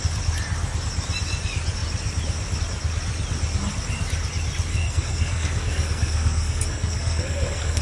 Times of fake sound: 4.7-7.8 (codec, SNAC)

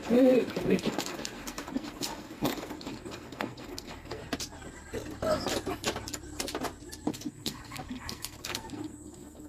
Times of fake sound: 0.0-4.2 (codec, SNAC); 7.1-9.5

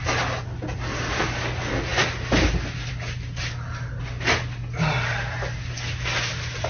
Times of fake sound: none

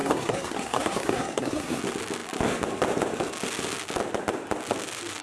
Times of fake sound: 0.0-1.8 (codec, SNAC)

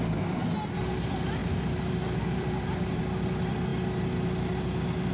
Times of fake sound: 1.4-3.0 (vocoder, BigVGAN v2)

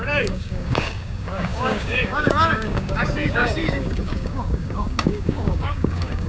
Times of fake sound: 0.0-6.3 (codec, DAC)

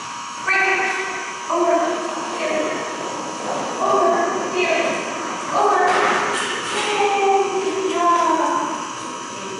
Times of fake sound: 0.0-4.2 (autoencoder, DAC-VAE); 7.4-9.6